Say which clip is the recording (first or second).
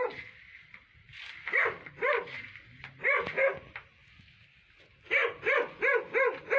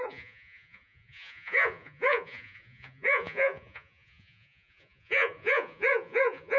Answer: first